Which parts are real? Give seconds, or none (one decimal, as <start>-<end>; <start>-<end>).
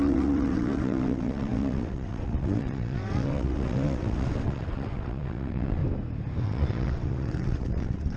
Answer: 5.8-6.4